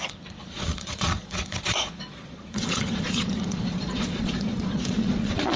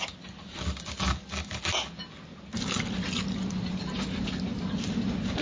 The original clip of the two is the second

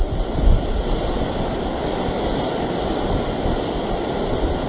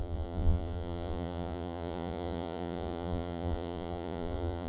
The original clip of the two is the first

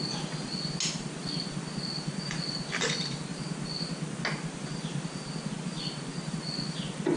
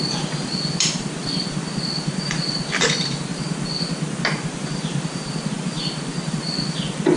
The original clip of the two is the first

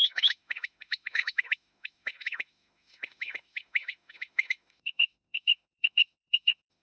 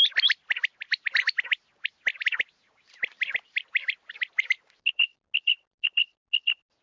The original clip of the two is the second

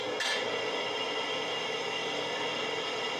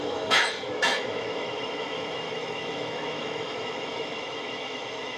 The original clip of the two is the first